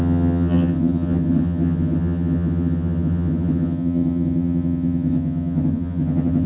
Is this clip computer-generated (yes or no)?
yes